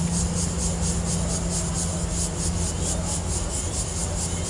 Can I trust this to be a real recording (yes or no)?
yes